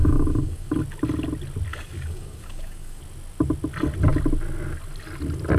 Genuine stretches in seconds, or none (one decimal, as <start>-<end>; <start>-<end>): 0.8-1.7; 3.0-5.6